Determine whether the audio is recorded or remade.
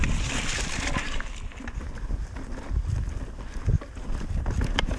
recorded